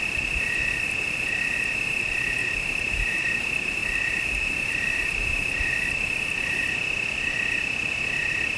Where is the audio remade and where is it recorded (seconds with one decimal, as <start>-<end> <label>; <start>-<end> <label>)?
0.0-2.4 recorded; 2.4-3.2 remade; 3.2-3.8 recorded; 3.8-6.6 remade; 6.6-8.6 recorded